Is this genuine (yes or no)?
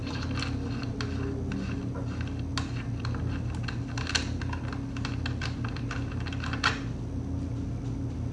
yes